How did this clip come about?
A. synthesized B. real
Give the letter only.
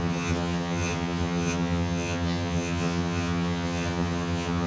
A